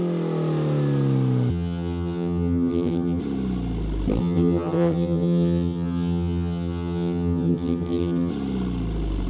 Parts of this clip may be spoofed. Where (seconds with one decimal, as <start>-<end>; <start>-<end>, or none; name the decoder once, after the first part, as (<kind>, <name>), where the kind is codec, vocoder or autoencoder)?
1.5-3.2 (vocoder, HiFi-GAN); 4.2-8.3